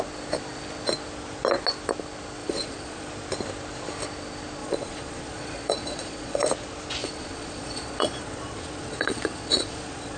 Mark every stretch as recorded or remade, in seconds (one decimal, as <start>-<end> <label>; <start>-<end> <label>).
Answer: 0.0-2.4 recorded; 2.4-3.1 remade; 3.1-4.6 recorded; 4.6-6.4 remade; 6.4-7.0 recorded; 7.0-10.2 remade

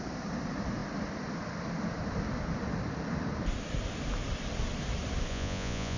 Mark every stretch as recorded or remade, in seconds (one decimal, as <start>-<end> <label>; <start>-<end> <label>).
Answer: 0.0-5.3 recorded; 5.3-6.0 remade